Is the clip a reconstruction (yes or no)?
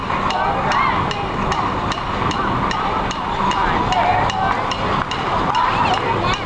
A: no